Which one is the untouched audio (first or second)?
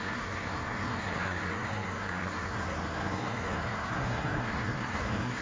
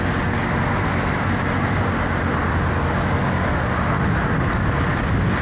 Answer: second